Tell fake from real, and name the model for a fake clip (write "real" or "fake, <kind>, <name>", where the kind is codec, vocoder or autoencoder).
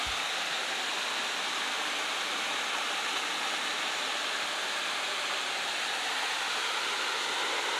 real